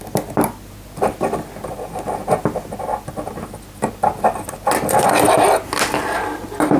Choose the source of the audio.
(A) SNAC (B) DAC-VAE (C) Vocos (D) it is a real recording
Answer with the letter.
D